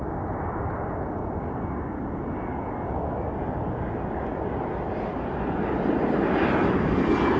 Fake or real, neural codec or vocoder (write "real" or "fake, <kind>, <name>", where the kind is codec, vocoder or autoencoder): real